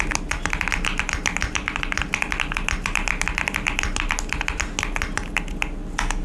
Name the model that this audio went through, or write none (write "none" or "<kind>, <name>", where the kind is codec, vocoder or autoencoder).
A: none